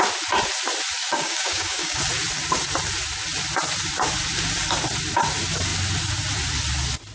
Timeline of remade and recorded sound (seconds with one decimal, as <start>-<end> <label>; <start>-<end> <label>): 0.0-1.0 recorded; 1.0-2.0 remade; 2.0-7.1 recorded